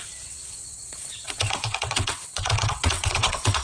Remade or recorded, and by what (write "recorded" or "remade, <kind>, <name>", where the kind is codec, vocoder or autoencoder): remade, vocoder, WaveNeXt